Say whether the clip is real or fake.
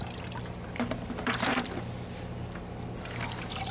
real